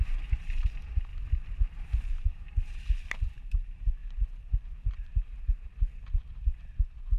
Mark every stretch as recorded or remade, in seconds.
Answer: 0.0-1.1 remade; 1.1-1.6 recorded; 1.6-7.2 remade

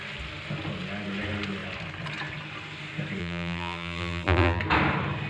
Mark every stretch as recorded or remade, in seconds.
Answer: 0.0-3.2 recorded; 3.2-4.6 remade; 4.6-5.3 recorded

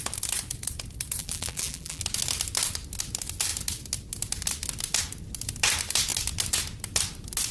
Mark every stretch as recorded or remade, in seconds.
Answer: 0.0-1.2 recorded; 1.2-2.0 remade; 2.0-7.5 recorded

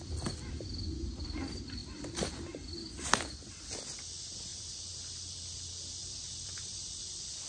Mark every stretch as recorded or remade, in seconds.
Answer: 0.0-4.5 recorded; 4.5-5.5 remade; 5.5-6.0 recorded; 6.0-7.5 remade

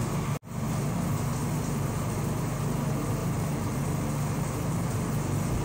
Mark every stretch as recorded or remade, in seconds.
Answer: 0.0-1.4 recorded; 1.4-2.2 remade; 2.2-3.2 recorded; 3.2-4.9 remade; 4.9-5.6 recorded